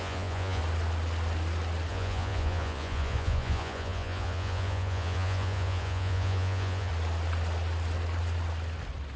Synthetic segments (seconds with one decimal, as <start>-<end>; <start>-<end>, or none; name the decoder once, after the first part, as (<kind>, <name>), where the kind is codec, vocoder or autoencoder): 0.0-0.6 (vocoder, Vocos); 1.9-6.9